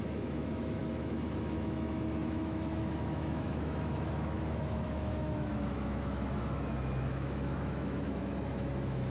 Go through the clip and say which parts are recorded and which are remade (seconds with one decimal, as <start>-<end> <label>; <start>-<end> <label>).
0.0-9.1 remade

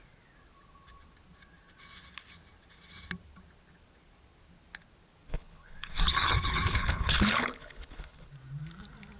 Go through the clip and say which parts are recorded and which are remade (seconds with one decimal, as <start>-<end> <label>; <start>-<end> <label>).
0.0-5.3 recorded; 5.3-6.0 remade; 6.0-6.7 recorded; 6.7-8.3 remade; 8.3-9.2 recorded

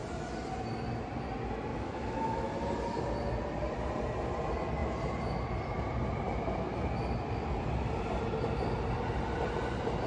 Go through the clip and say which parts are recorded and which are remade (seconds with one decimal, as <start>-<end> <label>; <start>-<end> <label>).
0.0-1.7 recorded; 1.7-2.5 remade; 2.5-10.1 recorded

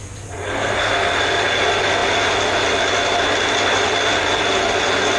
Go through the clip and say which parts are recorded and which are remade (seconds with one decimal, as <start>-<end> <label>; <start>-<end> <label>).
0.0-0.5 recorded; 0.5-1.2 remade; 1.2-5.2 recorded

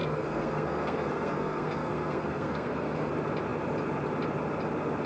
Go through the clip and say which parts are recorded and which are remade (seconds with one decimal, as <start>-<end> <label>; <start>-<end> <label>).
0.0-3.1 remade; 3.1-5.1 recorded

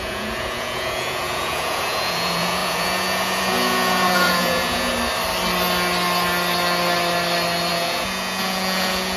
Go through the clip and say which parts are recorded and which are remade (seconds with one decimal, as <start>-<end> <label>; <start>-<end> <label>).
0.0-4.9 remade; 4.9-7.7 recorded; 7.7-9.2 remade

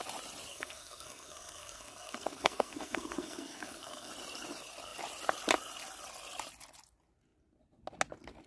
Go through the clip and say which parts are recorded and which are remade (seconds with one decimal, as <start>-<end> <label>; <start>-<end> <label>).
0.0-0.5 recorded; 0.5-4.1 remade; 4.1-8.5 recorded